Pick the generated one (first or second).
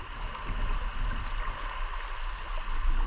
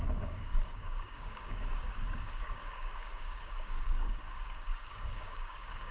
second